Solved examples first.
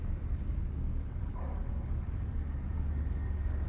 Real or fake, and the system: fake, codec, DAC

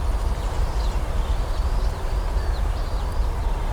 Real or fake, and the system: real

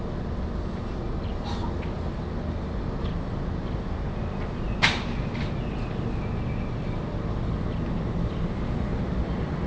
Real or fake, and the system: real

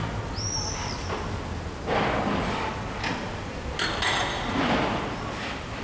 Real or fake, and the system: real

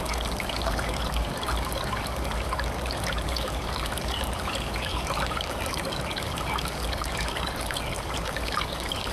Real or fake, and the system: fake, codec, DAC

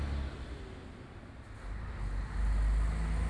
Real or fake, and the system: real